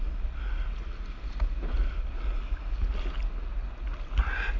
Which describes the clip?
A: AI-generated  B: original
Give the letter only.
B